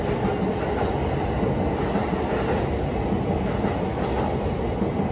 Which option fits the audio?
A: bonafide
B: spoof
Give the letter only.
A